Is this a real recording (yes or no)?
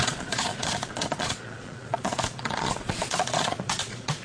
no